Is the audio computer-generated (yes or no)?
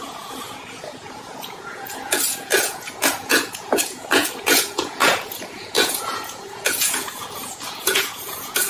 yes